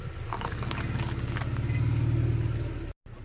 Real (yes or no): yes